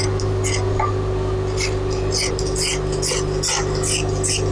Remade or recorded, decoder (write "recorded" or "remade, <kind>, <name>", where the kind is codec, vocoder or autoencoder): recorded